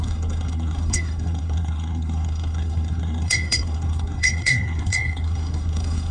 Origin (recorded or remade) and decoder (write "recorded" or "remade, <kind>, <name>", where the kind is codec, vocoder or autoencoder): remade, codec, SNAC